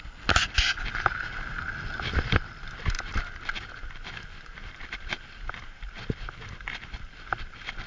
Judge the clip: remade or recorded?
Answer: recorded